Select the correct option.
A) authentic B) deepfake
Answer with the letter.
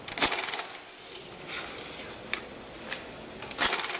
A